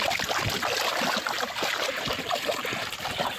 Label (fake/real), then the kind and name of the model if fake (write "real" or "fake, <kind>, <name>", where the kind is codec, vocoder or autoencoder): real